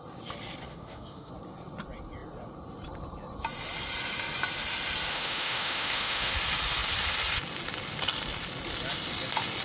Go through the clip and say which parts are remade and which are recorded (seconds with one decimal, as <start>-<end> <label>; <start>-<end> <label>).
0.0-0.7 recorded; 0.7-1.3 remade; 1.3-5.1 recorded; 5.1-6.3 remade; 6.3-9.6 recorded